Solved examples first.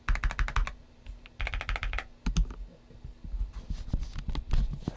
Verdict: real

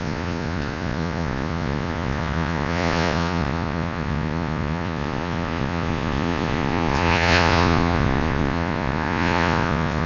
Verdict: fake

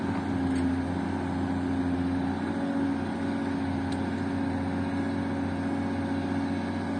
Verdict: real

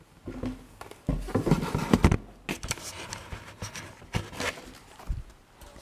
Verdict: real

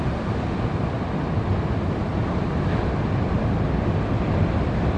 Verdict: real